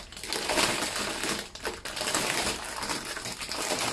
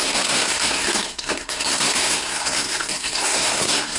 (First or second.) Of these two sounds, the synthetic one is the second